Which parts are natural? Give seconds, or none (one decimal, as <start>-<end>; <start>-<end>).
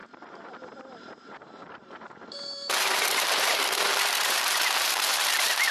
none